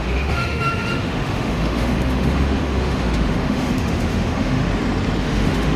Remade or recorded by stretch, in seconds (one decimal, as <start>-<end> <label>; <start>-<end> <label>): 0.0-4.6 remade; 4.6-5.2 recorded; 5.2-5.8 remade